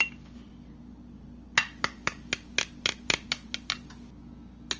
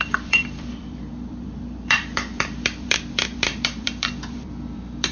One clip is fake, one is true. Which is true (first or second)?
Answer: first